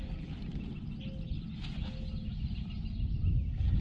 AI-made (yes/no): no